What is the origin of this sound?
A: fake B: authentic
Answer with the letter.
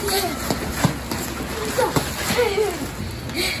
B